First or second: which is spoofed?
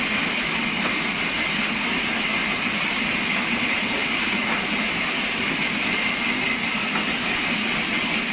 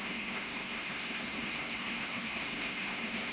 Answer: second